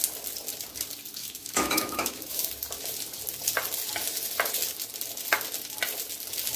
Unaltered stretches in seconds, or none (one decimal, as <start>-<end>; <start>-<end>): 0.0-1.2; 2.5-6.6